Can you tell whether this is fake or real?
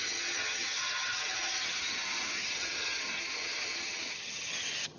fake